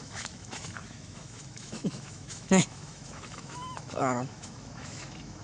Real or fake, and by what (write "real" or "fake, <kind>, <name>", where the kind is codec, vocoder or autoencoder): fake, autoencoder, DAC-VAE